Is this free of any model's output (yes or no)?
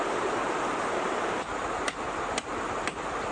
yes